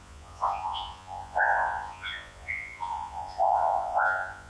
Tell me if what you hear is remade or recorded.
remade